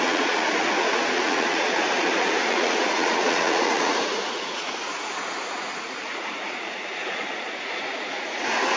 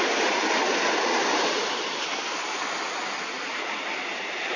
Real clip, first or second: second